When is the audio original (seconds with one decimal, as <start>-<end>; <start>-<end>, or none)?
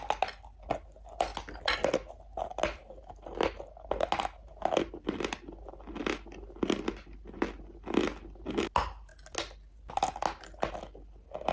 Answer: 0.0-11.5